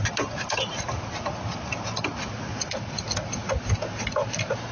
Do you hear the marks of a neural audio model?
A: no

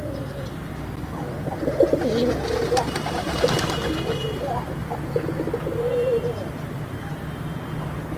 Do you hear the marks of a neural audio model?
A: no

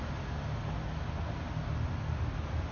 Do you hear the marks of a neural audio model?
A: no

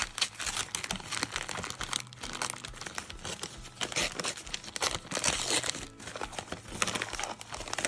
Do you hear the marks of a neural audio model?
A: no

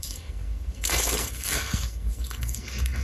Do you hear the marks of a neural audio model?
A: yes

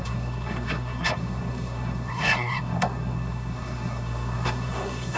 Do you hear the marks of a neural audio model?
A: yes